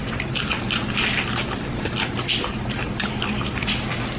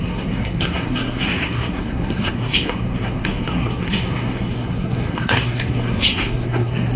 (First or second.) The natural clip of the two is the first